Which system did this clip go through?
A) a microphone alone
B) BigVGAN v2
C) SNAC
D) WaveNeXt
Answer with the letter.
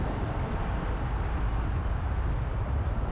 B